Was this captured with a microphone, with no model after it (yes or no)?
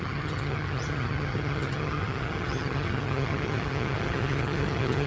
no